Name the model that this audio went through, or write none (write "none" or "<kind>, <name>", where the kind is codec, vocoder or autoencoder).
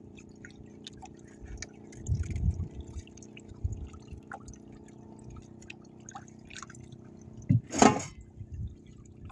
none